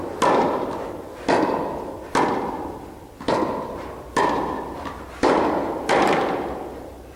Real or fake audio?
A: real